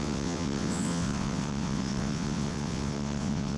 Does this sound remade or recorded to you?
remade